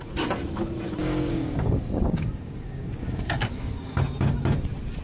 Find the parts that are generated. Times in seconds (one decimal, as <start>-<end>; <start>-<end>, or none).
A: 1.0-4.0